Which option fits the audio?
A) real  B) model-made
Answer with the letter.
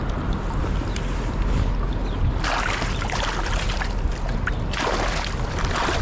A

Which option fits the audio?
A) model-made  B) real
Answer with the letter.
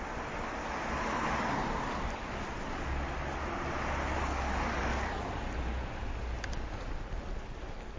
B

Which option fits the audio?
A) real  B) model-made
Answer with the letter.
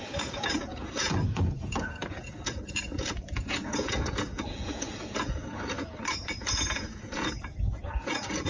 B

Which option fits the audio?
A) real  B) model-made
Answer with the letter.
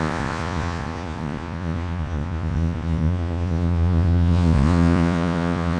B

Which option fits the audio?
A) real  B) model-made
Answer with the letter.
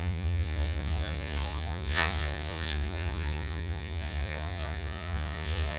B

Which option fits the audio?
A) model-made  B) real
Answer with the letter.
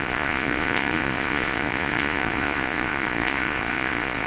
A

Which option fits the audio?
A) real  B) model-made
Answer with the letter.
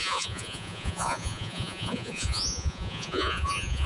B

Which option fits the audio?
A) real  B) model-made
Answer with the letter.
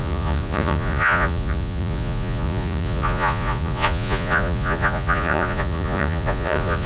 B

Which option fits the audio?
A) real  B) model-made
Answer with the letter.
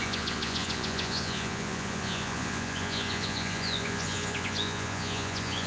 B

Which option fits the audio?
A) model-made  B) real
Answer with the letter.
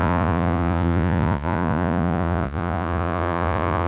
A